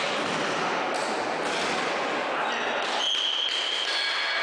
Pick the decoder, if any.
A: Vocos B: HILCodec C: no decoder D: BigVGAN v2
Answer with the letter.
C